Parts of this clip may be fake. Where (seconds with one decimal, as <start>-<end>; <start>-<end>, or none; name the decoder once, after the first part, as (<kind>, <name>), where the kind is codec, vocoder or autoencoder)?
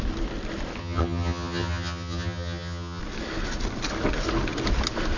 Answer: 0.8-3.0 (vocoder, HiFi-GAN)